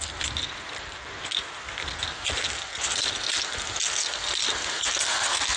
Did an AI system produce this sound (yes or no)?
no